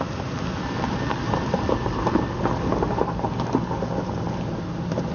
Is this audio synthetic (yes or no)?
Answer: no